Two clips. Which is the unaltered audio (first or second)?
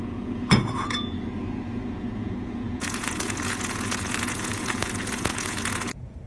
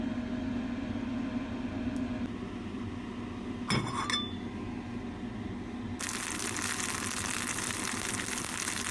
second